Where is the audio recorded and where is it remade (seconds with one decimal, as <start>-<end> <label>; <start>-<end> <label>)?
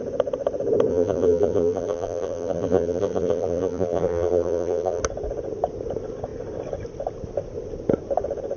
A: 0.0-0.9 recorded; 0.9-5.0 remade; 5.0-8.6 recorded